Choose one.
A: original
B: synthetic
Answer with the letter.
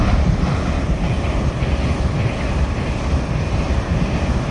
A